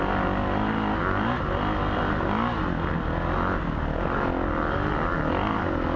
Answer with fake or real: real